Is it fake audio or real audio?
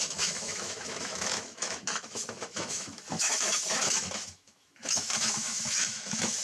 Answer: fake